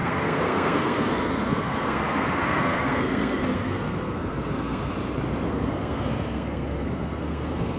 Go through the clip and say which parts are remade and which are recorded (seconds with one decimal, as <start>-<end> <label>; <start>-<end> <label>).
0.0-4.9 remade; 4.9-5.5 recorded; 5.5-7.8 remade